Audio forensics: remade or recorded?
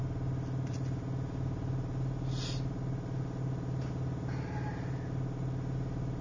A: recorded